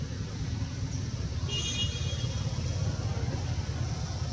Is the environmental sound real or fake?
real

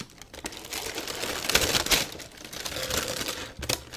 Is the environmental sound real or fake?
real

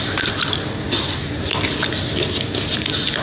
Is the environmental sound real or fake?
real